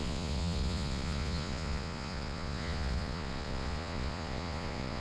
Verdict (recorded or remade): remade